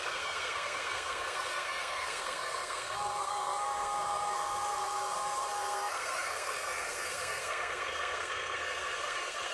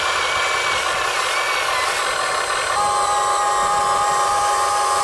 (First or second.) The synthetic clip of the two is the first